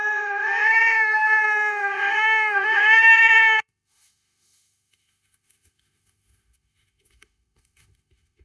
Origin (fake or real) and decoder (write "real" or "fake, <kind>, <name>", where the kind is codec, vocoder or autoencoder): fake, autoencoder, DAC-VAE